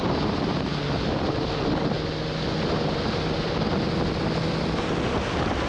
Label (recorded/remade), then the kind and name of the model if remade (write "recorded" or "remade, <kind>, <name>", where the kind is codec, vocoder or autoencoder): recorded